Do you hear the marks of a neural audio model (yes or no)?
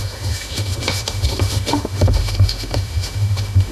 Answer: yes